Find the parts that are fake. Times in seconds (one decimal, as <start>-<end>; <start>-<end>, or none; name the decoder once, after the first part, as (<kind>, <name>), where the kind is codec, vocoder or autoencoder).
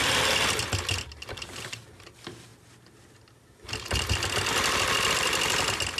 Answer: none